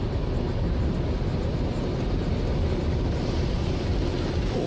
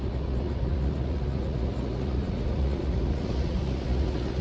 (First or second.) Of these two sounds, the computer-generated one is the second